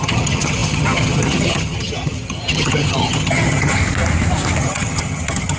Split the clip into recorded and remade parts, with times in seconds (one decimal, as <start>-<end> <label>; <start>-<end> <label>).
0.0-3.8 remade; 3.8-4.6 recorded; 4.6-5.6 remade